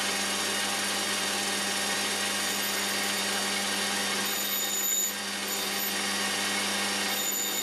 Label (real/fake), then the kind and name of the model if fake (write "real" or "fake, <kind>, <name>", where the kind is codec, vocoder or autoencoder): real